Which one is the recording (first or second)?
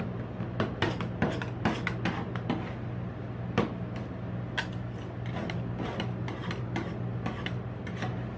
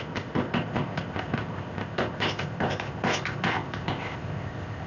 first